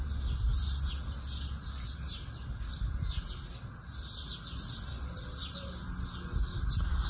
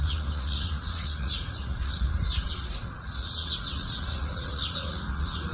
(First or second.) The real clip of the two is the first